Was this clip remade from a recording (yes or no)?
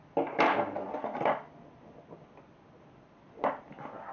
no